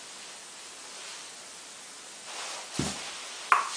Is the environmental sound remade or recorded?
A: recorded